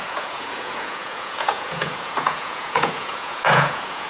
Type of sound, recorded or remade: remade